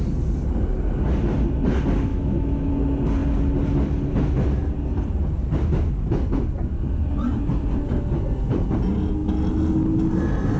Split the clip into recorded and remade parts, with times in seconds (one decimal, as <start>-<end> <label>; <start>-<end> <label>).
0.0-2.1 recorded; 2.1-2.7 remade; 2.7-10.6 recorded

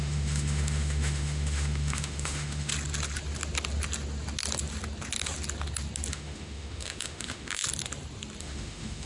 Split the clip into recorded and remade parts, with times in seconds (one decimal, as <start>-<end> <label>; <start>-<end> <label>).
0.0-2.7 remade; 2.7-6.1 recorded; 6.1-7.6 remade; 7.6-8.4 recorded; 8.4-9.1 remade

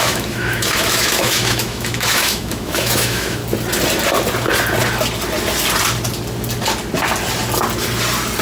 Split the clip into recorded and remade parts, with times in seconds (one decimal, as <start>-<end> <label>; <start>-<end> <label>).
0.0-3.4 remade; 3.4-8.4 recorded

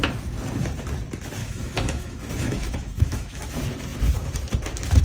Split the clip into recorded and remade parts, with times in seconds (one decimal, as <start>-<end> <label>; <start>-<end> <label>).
0.0-1.4 recorded; 1.4-3.4 remade; 3.4-5.0 recorded